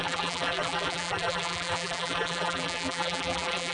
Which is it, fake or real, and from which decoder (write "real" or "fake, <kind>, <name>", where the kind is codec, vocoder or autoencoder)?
fake, vocoder, BigVGAN v2